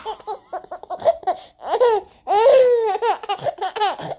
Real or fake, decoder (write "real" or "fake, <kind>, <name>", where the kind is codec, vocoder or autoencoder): real